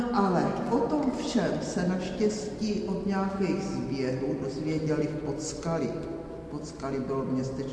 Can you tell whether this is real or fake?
real